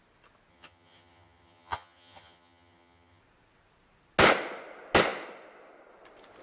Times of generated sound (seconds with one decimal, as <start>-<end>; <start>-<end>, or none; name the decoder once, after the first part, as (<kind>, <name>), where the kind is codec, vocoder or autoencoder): 0.5-3.2 (vocoder, HiFi-GAN)